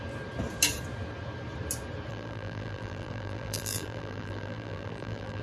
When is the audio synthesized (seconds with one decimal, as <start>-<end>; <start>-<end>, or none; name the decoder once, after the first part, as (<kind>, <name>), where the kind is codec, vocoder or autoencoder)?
2.1-5.4 (vocoder, BigVGAN v2)